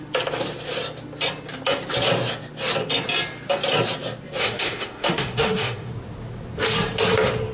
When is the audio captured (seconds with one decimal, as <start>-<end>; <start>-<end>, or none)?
0.0-4.4; 5.9-7.5